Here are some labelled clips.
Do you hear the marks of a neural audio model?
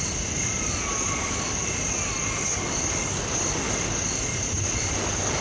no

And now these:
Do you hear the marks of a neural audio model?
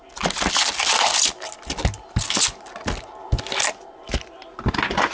no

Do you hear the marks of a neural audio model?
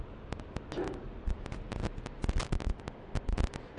no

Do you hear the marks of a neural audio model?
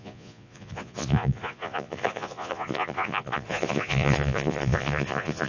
yes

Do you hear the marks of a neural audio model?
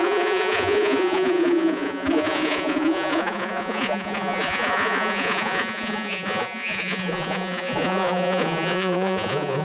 yes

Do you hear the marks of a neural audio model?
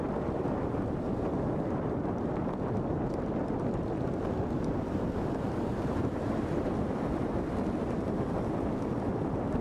no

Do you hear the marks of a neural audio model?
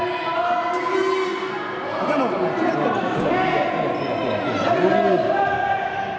no